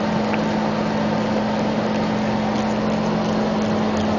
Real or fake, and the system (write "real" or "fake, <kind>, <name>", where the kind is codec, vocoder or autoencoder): real